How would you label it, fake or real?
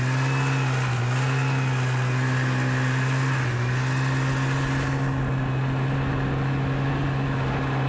real